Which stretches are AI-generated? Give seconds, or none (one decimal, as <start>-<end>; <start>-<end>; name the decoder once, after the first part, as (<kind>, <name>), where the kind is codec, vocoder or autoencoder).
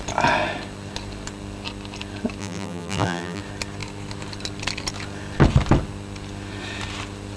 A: 2.4-3.4 (vocoder, BigVGAN v2)